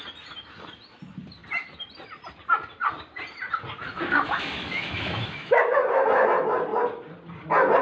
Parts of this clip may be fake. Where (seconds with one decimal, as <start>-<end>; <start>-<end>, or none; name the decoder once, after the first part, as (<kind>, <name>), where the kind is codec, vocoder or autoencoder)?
3.9-5.7 (autoencoder, DAC-VAE)